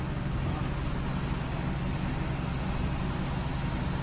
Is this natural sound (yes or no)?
yes